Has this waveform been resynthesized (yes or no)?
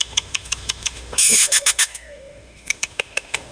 yes